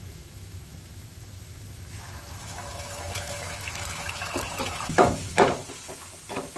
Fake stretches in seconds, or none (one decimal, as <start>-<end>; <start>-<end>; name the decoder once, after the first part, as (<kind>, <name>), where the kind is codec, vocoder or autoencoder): 0.0-5.6 (autoencoder, DAC-VAE)